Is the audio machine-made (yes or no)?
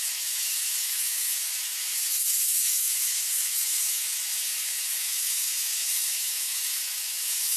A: yes